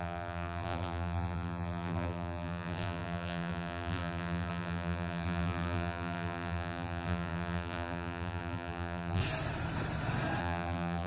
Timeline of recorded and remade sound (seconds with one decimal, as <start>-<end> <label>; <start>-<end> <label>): 0.0-9.2 remade; 9.2-10.4 recorded; 10.4-11.1 remade